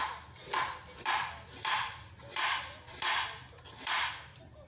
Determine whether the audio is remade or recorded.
recorded